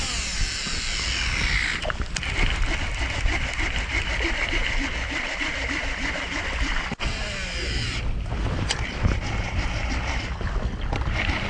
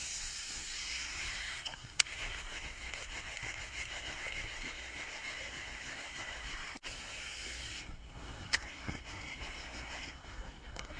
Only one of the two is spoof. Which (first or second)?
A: second